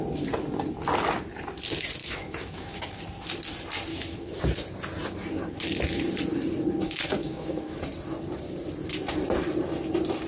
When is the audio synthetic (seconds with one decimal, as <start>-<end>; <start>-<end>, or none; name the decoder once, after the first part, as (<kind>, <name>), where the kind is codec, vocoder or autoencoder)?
2.0-2.8 (autoencoder, DAC-VAE); 3.9-4.4; 7.2-7.8